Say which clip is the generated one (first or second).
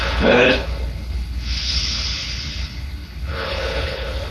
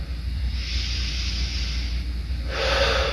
first